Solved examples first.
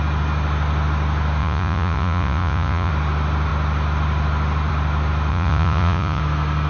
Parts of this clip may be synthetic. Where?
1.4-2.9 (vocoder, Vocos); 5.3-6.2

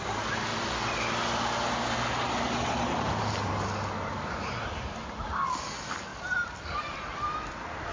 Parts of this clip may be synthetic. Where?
none

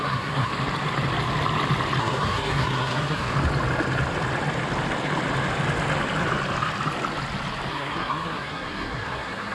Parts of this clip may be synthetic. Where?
0.0-0.5 (codec, SNAC); 2.0-3.3; 7.7-9.5

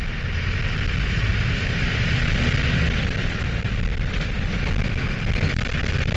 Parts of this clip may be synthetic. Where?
1.3-5.0 (vocoder, BigVGAN v2)

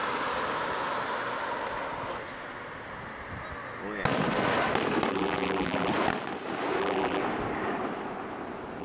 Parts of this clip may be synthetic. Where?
5.1-5.9 (vocoder, BigVGAN v2); 6.8-7.2

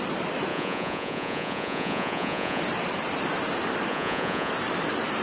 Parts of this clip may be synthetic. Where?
0.5-2.6 (vocoder, Vocos); 3.9-4.5